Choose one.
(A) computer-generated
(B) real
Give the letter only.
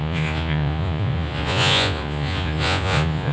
A